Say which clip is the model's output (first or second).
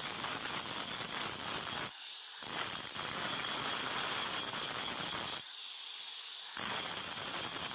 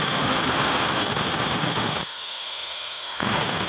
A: second